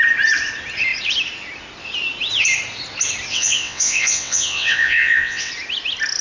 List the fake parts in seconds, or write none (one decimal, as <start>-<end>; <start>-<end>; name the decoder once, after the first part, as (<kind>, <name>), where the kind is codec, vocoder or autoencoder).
3.3-5.5 (vocoder, WaveNeXt)